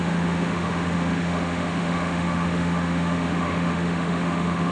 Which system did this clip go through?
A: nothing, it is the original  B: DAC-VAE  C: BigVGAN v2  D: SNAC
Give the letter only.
B